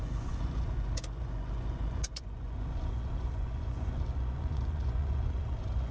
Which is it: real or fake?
fake